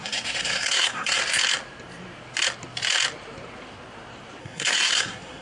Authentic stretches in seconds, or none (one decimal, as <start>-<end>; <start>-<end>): 1.2-4.4